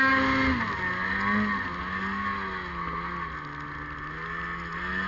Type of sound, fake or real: real